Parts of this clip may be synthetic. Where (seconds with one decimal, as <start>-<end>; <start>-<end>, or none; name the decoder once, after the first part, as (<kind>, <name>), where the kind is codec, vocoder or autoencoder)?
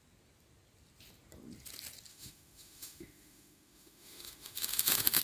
2.1-5.2 (autoencoder, DAC-VAE)